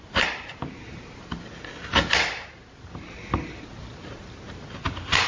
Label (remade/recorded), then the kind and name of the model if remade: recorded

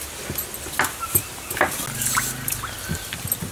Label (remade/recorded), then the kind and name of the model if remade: recorded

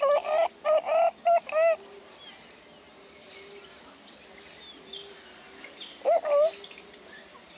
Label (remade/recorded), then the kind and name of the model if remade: recorded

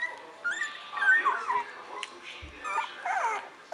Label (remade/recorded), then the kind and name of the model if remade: recorded